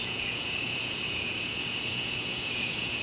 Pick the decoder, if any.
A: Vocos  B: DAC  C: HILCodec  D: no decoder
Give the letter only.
A